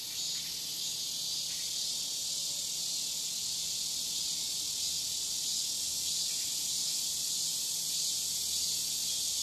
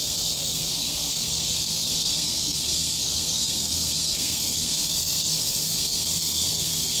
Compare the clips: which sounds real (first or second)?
first